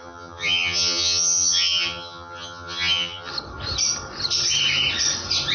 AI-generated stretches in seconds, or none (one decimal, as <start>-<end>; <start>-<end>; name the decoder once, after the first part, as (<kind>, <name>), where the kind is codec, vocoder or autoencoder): 0.0-3.3 (vocoder, HiFi-GAN)